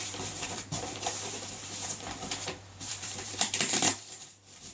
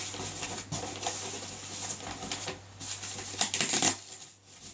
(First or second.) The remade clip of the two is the first